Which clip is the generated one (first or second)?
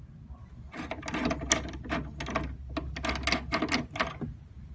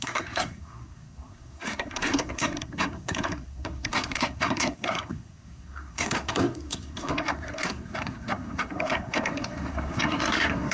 second